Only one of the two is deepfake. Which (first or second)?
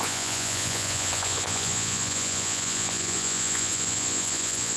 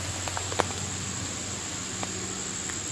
first